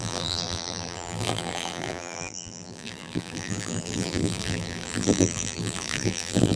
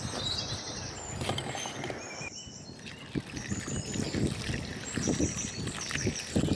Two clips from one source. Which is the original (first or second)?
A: second